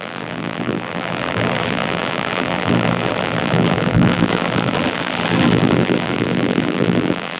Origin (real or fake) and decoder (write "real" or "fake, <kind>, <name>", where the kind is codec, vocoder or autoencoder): fake, vocoder, BigVGAN v2